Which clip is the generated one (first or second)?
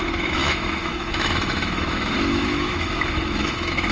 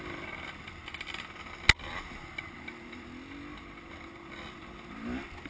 first